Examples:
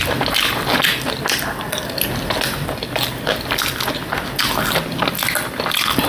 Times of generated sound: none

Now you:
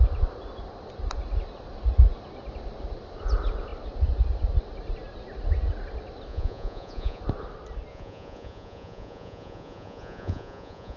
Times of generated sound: 6.3-7.2; 7.9-11.0

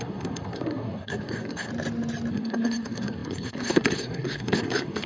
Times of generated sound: 0.0-1.7; 2.3-5.1

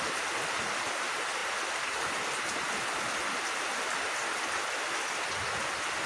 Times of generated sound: none

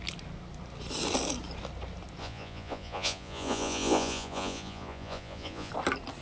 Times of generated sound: 2.2-5.7

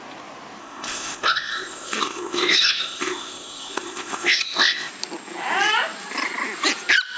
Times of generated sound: 0.6-4.9

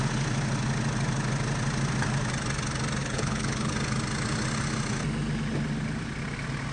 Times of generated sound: 3.0-3.7